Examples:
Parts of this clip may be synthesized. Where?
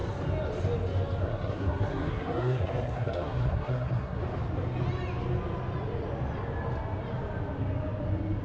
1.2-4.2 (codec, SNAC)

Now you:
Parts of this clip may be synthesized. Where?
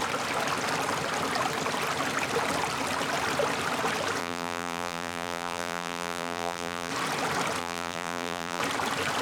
4.2-6.9 (vocoder, BigVGAN v2); 7.6-8.6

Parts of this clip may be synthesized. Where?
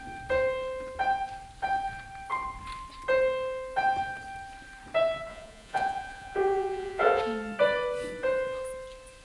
5.3-7.2 (vocoder, Vocos)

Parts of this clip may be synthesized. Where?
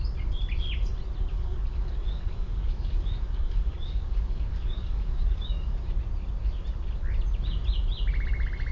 1.3-5.8 (codec, DAC)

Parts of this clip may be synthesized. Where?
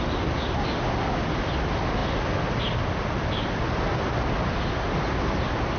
none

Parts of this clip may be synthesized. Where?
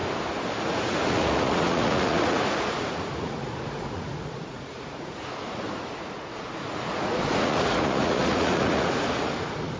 0.6-9.8 (vocoder, Vocos)